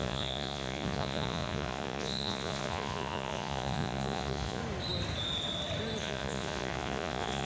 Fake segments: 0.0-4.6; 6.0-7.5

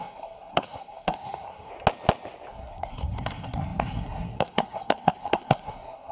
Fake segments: 0.0-1.7; 2.5-6.1

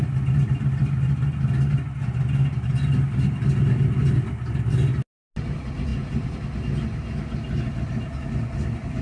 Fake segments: none

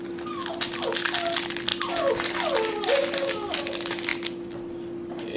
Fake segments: none

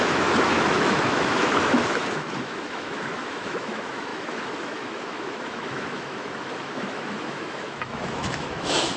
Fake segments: 0.0-9.0